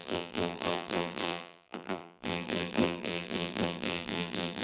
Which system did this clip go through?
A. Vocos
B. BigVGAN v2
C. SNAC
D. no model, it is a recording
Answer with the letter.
B